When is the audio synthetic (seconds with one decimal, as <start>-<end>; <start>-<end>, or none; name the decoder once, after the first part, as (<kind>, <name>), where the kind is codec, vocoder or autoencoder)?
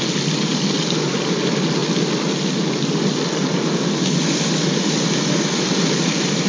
none